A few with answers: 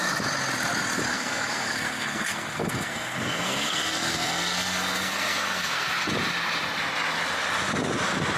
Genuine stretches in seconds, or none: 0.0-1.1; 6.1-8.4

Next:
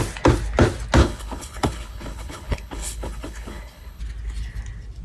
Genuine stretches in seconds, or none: 0.0-1.0; 4.0-5.0